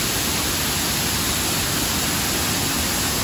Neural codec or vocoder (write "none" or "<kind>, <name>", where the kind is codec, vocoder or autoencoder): none